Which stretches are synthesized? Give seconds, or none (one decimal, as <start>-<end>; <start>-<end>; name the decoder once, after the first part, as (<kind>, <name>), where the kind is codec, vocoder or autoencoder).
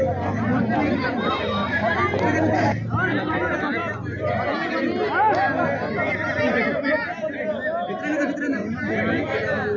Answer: none